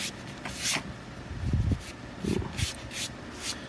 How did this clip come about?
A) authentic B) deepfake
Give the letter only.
A